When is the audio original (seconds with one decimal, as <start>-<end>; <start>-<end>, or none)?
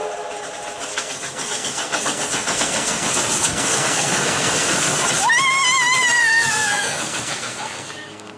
0.0-0.9; 5.1-6.2